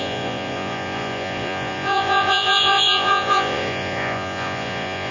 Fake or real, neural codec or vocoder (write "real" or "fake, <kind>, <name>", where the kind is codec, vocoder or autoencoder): fake, vocoder, Vocos